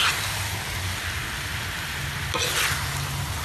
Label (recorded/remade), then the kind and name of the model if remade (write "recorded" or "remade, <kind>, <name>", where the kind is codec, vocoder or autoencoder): recorded